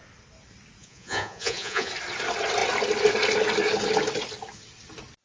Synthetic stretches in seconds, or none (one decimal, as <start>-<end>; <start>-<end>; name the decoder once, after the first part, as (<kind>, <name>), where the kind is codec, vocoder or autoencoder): 0.8-1.9 (vocoder, Vocos)